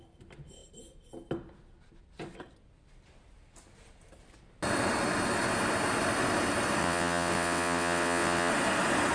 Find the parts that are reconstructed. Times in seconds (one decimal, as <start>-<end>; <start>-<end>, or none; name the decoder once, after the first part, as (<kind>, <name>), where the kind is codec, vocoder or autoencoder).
6.8-8.5 (vocoder, WaveNeXt)